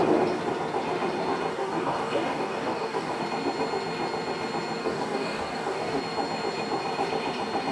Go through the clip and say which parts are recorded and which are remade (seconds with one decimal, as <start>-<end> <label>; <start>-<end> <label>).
0.0-1.5 recorded; 1.5-3.2 remade; 3.2-4.8 recorded; 4.8-6.0 remade; 6.0-7.7 recorded